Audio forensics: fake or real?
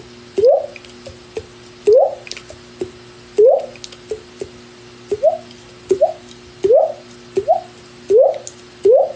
real